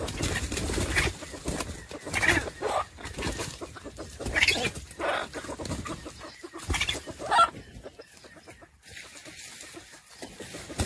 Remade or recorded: recorded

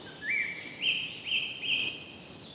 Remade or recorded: recorded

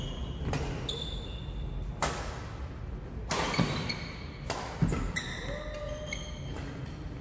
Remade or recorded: recorded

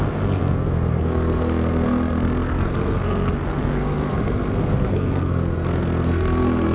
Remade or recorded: remade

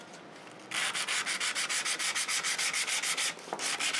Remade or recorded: recorded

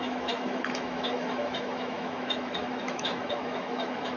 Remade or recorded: remade